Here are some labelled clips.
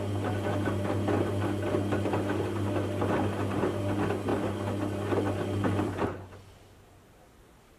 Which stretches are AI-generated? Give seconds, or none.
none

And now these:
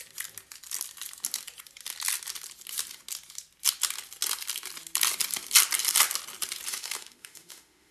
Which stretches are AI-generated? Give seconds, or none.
6.7-7.9 (autoencoder, DAC-VAE)

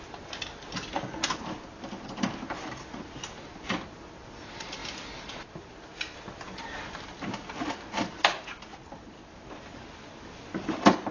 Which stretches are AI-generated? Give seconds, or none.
none

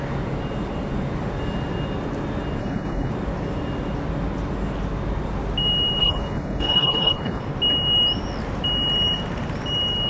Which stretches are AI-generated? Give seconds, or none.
2.6-3.1 (codec, HILCodec); 6.0-7.4